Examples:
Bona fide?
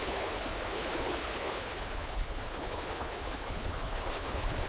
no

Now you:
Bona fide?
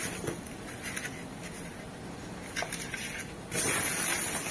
yes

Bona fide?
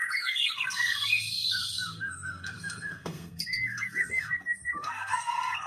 no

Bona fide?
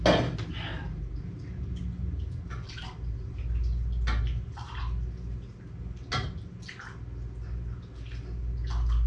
yes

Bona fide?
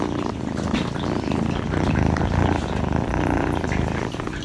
yes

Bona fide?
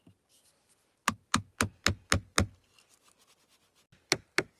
yes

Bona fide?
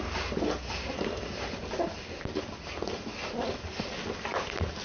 yes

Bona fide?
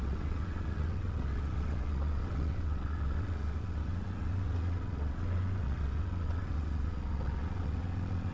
no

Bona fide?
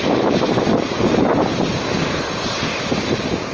yes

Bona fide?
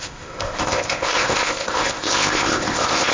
no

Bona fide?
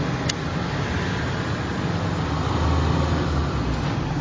yes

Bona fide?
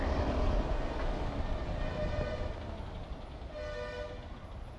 yes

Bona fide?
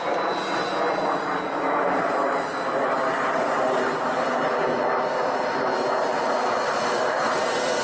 yes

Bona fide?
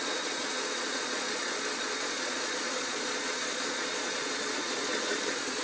no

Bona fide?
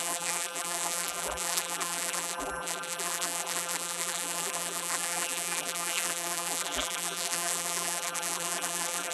no